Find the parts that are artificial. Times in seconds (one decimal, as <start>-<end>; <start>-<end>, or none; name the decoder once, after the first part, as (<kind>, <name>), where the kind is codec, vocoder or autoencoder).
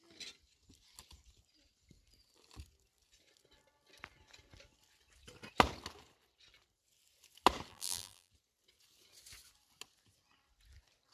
7.7-8.3 (vocoder, BigVGAN v2)